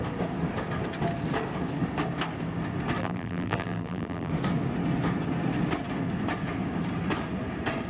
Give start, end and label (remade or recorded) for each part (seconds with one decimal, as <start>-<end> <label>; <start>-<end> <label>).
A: 0.0-3.0 recorded; 3.0-4.3 remade; 4.3-7.9 recorded